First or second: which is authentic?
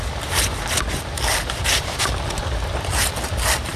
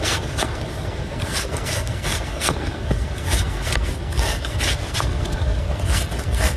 first